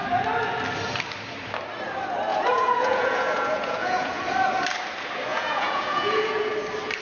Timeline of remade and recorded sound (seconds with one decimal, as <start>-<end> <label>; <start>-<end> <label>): 0.0-2.3 recorded; 2.3-4.2 remade; 4.2-5.3 recorded; 5.3-6.5 remade; 6.5-7.0 recorded